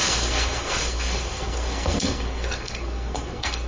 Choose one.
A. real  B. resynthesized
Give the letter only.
B